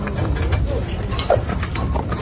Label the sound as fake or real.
real